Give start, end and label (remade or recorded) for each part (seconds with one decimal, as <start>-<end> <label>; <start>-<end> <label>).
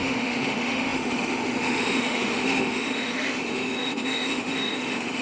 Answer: 0.0-5.2 remade